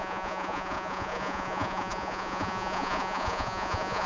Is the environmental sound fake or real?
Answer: fake